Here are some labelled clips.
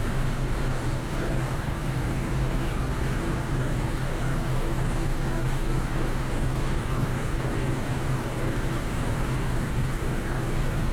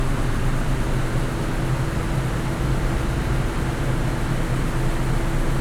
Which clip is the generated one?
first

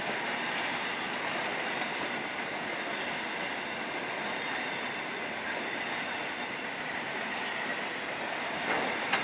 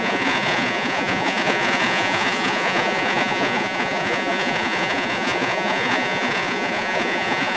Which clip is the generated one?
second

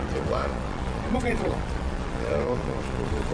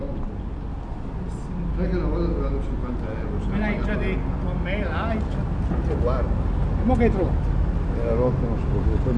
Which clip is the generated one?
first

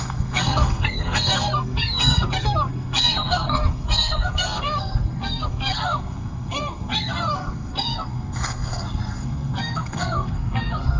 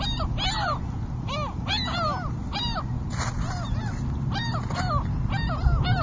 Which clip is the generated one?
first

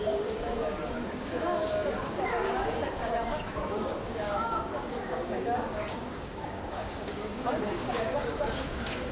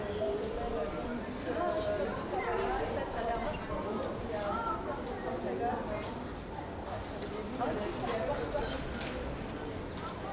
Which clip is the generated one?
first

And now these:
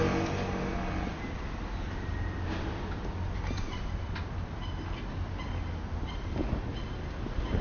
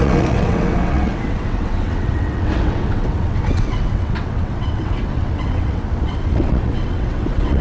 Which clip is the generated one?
second